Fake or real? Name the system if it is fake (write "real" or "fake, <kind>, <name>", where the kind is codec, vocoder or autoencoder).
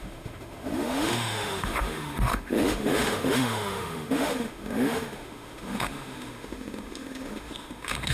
fake, autoencoder, DAC-VAE